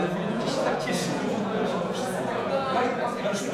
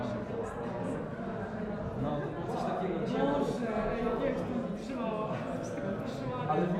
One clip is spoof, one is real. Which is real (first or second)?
second